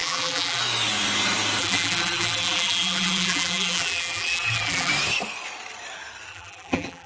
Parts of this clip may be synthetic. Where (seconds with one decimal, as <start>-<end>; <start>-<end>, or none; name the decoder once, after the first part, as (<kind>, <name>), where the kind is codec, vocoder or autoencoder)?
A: 0.0-0.6 (vocoder, BigVGAN v2); 1.6-4.9; 6.3-7.1